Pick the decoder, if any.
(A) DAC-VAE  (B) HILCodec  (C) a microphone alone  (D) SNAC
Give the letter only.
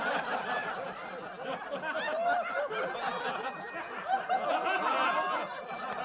C